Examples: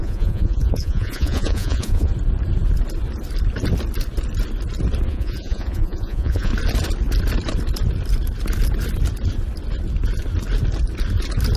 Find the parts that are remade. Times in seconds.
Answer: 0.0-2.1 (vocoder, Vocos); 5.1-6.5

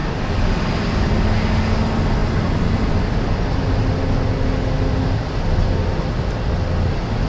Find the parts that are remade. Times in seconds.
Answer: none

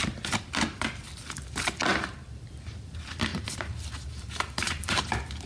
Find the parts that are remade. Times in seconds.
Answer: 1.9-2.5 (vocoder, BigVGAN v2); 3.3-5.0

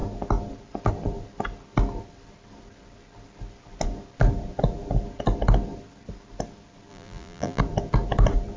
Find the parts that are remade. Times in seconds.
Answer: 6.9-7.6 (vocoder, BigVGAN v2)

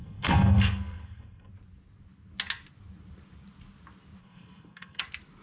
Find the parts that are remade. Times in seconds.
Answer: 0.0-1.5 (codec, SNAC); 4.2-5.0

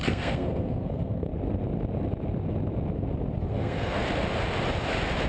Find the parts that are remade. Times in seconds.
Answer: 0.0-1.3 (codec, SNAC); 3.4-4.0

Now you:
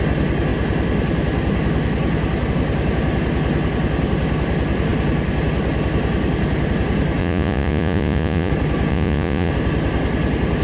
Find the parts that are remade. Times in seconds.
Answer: 7.2-8.5 (vocoder, Vocos); 8.9-9.5